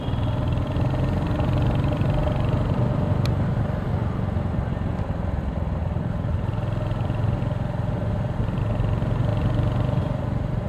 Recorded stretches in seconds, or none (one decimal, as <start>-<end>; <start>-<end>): 2.2-3.5; 3.9-5.0; 5.8-8.6